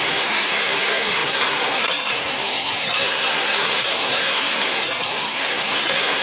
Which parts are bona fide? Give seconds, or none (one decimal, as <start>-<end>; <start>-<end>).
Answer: none